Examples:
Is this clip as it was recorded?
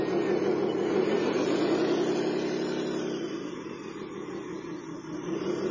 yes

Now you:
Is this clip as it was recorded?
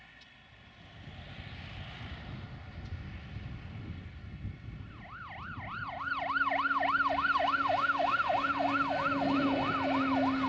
yes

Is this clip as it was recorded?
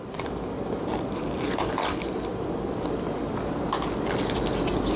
yes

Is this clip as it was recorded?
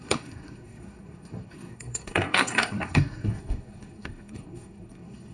no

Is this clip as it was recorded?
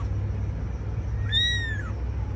yes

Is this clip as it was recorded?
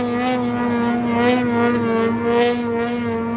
yes